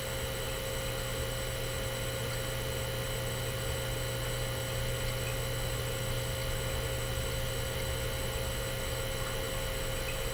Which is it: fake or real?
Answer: real